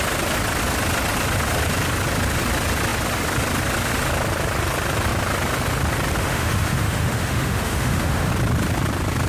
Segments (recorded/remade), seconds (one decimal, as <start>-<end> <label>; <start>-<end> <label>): 0.0-6.2 recorded; 6.2-8.3 remade; 8.3-9.3 recorded